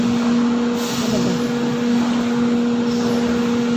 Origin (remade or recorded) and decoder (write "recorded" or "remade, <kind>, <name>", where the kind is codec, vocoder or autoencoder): recorded